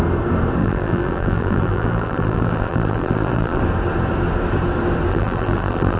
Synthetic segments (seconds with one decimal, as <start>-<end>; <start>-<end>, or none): 0.6-3.6; 5.1-6.0